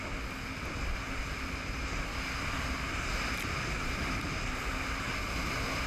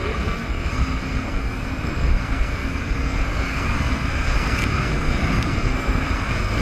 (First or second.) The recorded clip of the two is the first